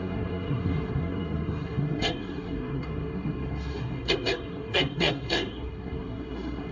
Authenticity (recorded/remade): remade